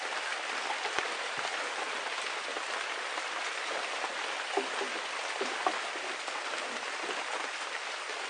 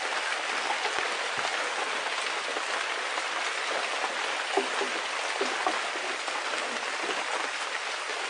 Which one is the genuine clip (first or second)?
second